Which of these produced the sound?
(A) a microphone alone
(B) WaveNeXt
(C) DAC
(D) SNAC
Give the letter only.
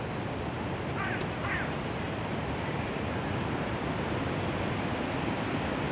A